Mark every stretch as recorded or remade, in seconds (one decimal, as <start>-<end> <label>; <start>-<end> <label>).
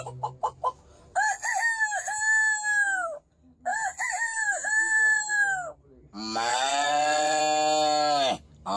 0.0-6.5 recorded; 6.5-7.4 remade; 7.4-8.8 recorded